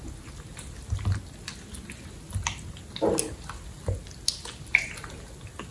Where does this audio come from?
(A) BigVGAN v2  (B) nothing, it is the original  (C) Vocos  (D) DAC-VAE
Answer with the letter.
B